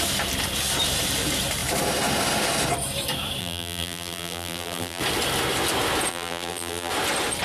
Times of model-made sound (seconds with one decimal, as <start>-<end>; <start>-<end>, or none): 3.4-5.0; 6.1-6.9